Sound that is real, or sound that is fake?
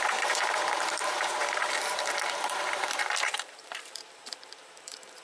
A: fake